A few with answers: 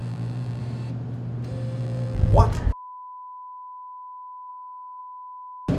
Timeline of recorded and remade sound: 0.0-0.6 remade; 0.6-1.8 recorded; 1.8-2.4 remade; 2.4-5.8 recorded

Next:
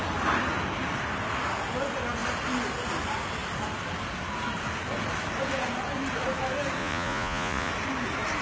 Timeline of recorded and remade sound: 0.0-6.8 recorded; 6.8-7.7 remade; 7.7-8.4 recorded

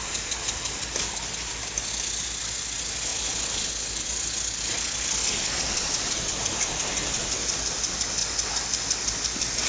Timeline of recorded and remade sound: 0.0-8.2 recorded; 8.2-9.7 remade

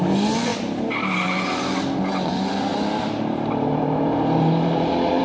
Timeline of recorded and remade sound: 0.0-2.7 recorded; 2.7-5.2 remade

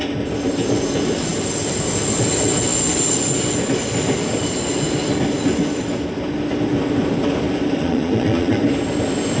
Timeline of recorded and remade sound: 0.0-7.8 recorded; 7.8-8.6 remade; 8.6-9.4 recorded

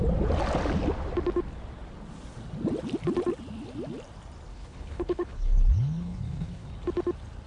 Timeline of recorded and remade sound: 0.0-4.5 recorded; 4.5-6.7 remade; 6.7-7.5 recorded

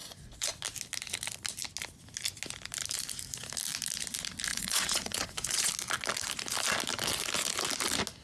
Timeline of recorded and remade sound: 0.0-0.5 remade; 0.5-4.5 recorded; 4.5-5.7 remade; 5.7-8.2 recorded

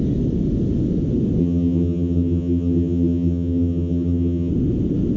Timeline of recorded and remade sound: 0.0-1.4 recorded; 1.4-4.5 remade; 4.5-5.2 recorded